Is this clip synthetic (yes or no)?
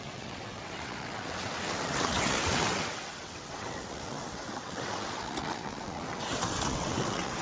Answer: yes